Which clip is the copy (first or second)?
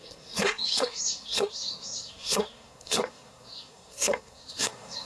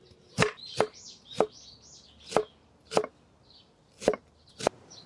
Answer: first